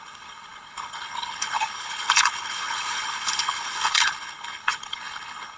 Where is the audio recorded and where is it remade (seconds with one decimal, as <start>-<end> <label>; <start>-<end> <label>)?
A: 0.0-5.6 remade